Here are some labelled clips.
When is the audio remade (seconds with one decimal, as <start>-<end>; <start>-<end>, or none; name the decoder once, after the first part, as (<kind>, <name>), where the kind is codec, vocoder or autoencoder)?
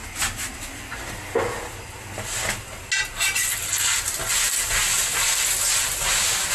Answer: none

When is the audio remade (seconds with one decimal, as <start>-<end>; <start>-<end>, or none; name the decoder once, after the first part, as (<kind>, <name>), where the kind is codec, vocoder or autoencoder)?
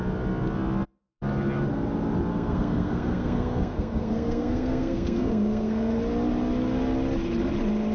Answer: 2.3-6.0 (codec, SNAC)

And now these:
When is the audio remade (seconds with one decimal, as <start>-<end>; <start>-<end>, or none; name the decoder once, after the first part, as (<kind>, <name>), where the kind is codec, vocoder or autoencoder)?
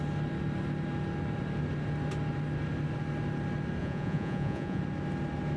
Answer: 3.8-4.8 (vocoder, Vocos)